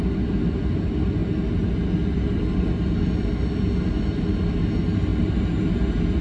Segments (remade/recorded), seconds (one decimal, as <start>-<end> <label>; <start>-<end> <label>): 0.0-6.2 recorded